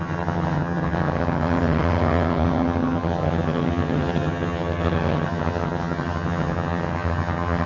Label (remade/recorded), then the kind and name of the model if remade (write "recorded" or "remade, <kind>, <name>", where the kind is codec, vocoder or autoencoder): remade, vocoder, HiFi-GAN